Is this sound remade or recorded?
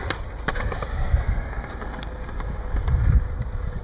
recorded